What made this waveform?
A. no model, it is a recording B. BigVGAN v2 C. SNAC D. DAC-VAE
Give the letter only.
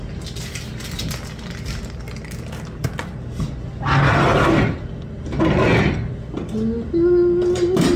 A